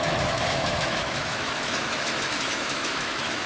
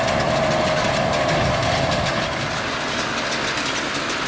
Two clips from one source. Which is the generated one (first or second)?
first